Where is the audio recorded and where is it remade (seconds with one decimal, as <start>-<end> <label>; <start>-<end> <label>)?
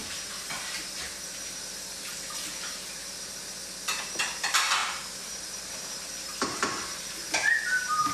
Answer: 0.0-3.4 remade; 3.4-4.8 recorded; 4.8-7.1 remade; 7.1-8.1 recorded